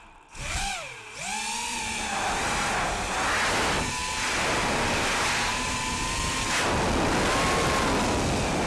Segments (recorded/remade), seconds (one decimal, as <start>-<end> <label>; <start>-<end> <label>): 0.0-8.7 recorded

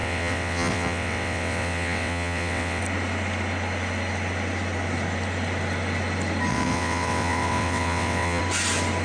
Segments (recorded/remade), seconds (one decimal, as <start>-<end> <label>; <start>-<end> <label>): 0.0-2.8 remade; 2.8-6.5 recorded; 6.5-8.4 remade; 8.4-9.0 recorded

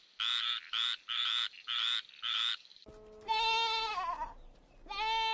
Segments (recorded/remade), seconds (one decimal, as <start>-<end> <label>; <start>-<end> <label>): 0.0-5.3 recorded